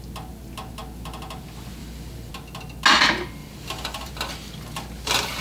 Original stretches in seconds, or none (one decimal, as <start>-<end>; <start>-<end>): 0.0-1.8; 2.3-3.4; 4.1-5.4